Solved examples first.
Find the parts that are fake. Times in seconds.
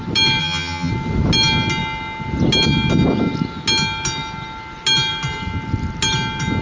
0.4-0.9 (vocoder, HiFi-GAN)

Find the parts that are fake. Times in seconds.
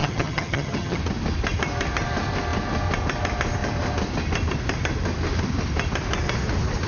0.0-1.0 (vocoder, HiFi-GAN)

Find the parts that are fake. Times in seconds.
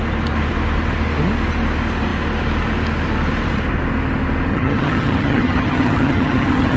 4.5-6.8 (vocoder, HiFi-GAN)